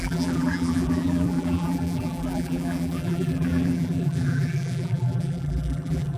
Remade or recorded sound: remade